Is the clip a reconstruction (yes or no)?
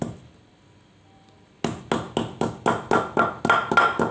no